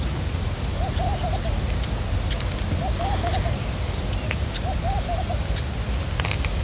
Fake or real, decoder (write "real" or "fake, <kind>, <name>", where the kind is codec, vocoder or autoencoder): real